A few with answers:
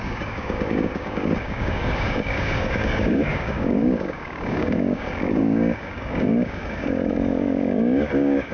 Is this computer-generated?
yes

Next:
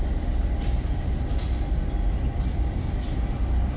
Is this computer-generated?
no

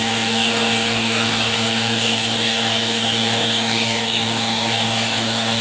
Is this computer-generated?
yes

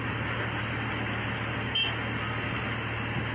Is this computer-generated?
no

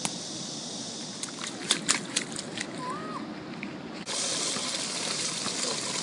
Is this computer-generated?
no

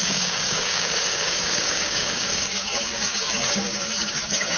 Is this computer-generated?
yes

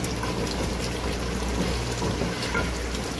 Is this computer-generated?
no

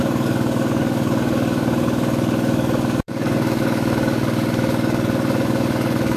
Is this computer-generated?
yes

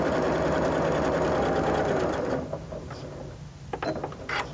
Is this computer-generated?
no